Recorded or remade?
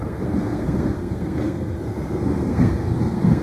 remade